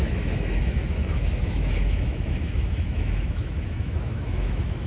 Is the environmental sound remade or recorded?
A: remade